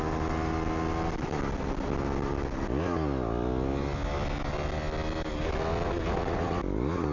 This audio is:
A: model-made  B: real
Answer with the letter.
B